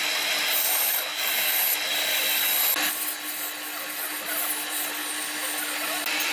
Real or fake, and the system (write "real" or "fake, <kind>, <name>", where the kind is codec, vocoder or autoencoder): real